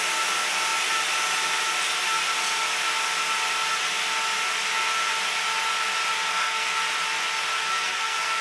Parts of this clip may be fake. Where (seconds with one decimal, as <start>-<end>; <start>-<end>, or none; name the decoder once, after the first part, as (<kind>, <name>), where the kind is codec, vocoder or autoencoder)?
6.3-6.8 (codec, SNAC); 7.7-8.4